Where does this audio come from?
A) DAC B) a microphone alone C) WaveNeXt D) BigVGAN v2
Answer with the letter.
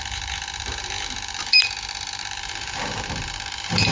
D